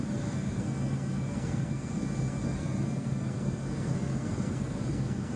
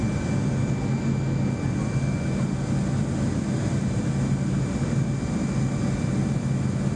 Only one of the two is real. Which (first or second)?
second